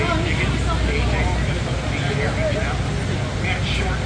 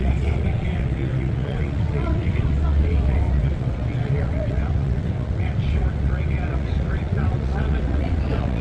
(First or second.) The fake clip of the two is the second